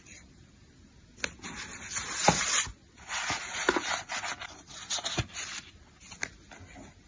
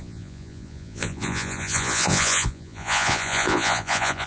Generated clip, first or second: second